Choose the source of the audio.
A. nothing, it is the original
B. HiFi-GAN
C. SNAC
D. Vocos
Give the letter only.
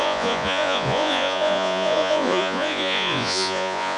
D